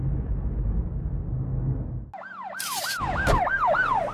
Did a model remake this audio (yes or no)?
no